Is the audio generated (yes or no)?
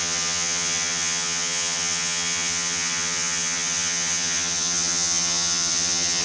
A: yes